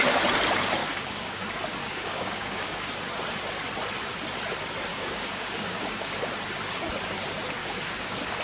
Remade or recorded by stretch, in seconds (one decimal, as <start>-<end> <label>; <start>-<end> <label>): 0.0-0.8 recorded; 0.8-1.4 remade; 1.4-1.8 recorded; 1.8-2.8 remade; 2.8-4.9 recorded; 4.9-6.3 remade; 6.3-7.6 recorded; 7.6-8.4 remade